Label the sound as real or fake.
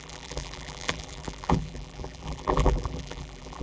fake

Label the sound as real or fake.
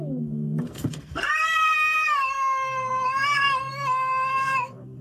fake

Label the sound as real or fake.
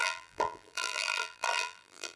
fake